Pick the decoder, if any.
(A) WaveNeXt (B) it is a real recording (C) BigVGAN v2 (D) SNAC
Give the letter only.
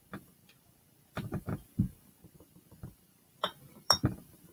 C